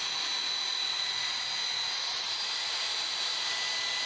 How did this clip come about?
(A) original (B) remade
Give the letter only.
A